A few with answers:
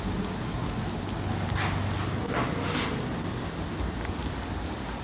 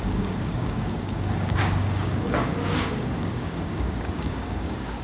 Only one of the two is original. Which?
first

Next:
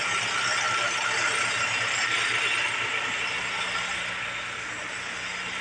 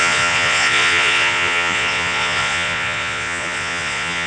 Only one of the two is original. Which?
first